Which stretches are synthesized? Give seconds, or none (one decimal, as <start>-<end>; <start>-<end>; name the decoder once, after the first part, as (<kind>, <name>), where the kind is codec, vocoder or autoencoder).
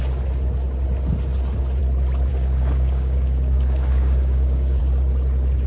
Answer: 2.3-4.8 (codec, DAC)